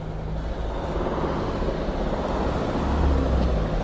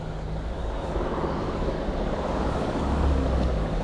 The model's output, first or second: second